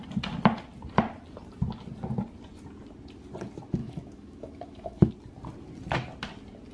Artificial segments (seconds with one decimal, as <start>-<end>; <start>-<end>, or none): 3.8-5.1